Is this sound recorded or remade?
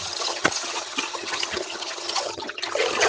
remade